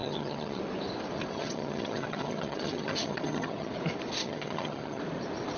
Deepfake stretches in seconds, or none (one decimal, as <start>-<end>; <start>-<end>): 0.0-0.6; 1.3-3.7; 4.2-5.0